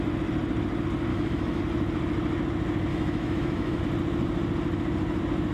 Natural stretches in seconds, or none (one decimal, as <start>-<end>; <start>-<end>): 0.0-1.1; 1.6-2.9; 3.8-5.5